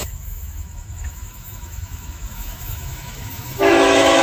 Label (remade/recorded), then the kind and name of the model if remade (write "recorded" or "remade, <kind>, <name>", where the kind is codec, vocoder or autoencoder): remade, autoencoder, DAC-VAE